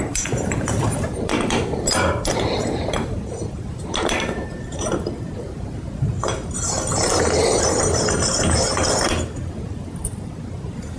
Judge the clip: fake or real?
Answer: fake